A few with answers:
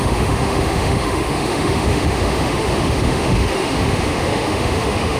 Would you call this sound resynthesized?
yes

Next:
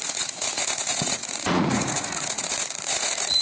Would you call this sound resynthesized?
yes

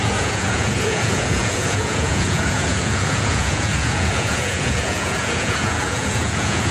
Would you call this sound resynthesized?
yes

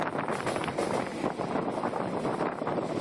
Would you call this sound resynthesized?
no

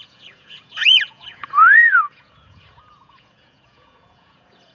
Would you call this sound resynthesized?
yes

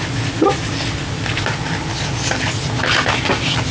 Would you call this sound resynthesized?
no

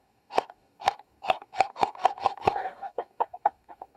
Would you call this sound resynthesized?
yes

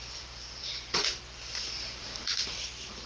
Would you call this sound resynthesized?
yes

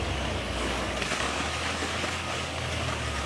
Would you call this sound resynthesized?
yes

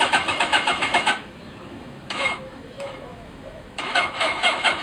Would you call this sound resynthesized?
yes